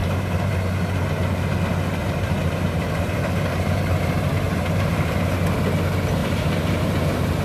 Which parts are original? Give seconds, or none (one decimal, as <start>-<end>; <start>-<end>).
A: 0.5-2.0; 5.2-6.2